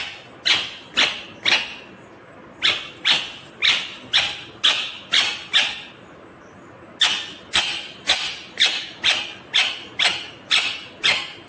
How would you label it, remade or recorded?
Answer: recorded